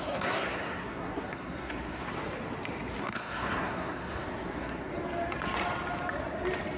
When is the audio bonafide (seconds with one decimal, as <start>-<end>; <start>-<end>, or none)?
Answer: 2.1-3.0; 4.9-6.8